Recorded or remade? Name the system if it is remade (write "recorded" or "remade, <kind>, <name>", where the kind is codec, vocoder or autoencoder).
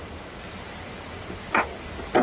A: recorded